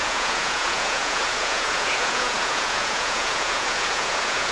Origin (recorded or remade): remade